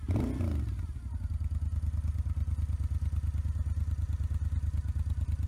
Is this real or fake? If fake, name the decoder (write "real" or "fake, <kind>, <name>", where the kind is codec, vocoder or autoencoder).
real